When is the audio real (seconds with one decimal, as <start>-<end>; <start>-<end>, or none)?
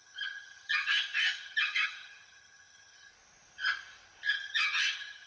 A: 3.1-4.3